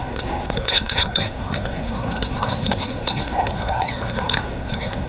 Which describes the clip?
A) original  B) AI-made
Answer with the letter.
B